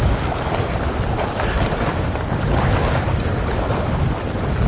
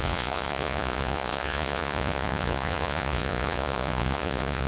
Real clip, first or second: first